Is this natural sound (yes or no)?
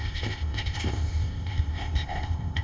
no